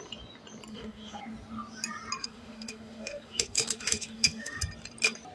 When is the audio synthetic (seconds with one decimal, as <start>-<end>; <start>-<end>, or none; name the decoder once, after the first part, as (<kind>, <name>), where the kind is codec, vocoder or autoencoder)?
0.7-1.2 (autoencoder, DAC-VAE); 2.2-4.6